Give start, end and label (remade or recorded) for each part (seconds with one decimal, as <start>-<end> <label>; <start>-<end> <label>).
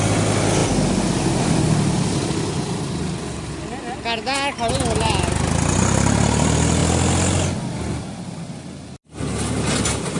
0.0-0.6 recorded; 0.6-1.5 remade; 1.5-10.2 recorded